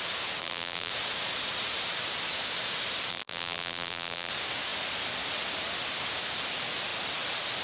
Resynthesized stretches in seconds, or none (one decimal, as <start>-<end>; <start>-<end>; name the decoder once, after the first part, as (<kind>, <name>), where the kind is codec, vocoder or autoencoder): 0.4-0.9 (vocoder, BigVGAN v2); 3.1-4.3